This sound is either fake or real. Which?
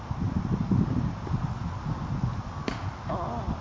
real